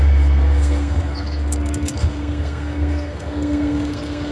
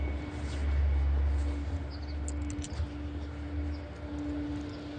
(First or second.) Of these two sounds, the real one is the second